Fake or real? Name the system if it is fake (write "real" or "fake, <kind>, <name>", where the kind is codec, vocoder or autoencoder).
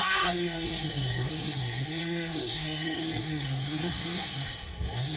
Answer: fake, codec, SNAC